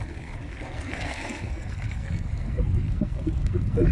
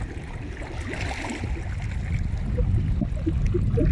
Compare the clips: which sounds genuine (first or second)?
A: second